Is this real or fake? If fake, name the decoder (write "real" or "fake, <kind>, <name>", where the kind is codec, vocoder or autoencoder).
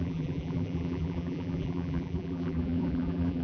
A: fake, vocoder, BigVGAN v2